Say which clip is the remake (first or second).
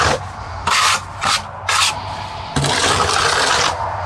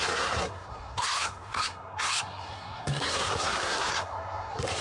second